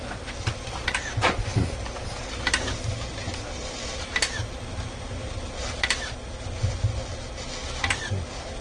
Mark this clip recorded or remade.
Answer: recorded